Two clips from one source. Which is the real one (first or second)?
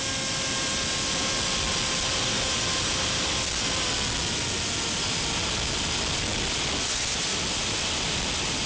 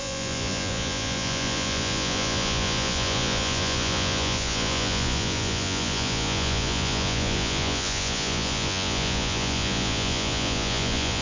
first